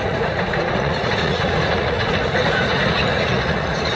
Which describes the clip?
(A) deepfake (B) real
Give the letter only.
A